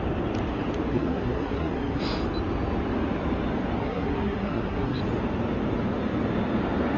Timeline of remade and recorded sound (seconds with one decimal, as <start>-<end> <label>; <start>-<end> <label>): 0.0-0.9 recorded; 0.9-2.0 remade; 2.0-3.8 recorded; 3.8-5.0 remade; 5.0-7.0 recorded